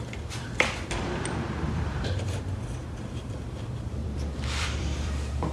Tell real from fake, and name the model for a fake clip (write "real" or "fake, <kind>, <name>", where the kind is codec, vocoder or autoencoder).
fake, vocoder, BigVGAN v2